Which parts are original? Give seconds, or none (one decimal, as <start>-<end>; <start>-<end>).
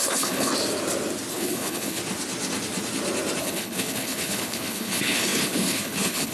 0.5-1.3; 2.0-3.4